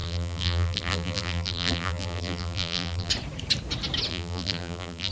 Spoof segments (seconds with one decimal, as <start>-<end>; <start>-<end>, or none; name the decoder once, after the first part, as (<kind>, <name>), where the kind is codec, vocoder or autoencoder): 0.0-3.1 (vocoder, BigVGAN v2); 4.1-5.1